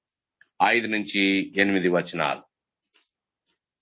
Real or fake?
real